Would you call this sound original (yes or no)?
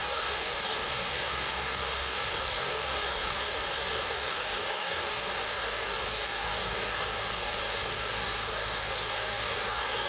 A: no